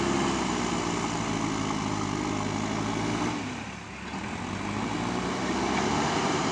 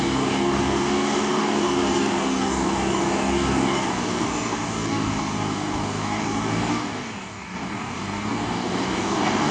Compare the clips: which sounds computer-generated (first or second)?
second